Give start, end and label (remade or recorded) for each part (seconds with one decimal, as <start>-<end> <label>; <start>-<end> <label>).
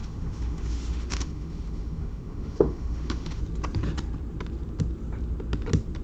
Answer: 0.0-3.4 remade; 3.4-6.0 recorded